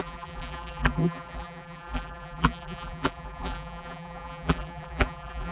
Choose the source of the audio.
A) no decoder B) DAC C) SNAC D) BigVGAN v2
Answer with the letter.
D